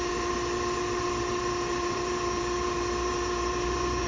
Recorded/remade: remade